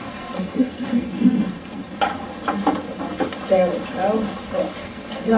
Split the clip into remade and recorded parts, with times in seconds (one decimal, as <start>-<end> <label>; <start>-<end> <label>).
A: 0.0-1.8 remade; 1.8-4.8 recorded; 4.8-5.4 remade